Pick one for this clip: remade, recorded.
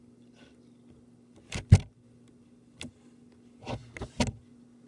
recorded